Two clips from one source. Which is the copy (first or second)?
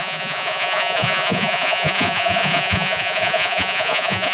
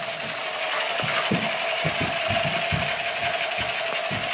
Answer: first